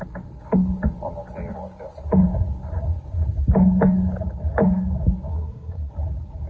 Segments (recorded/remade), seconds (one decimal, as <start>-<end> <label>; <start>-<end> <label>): 0.0-5.3 recorded; 5.3-5.9 remade; 5.9-6.5 recorded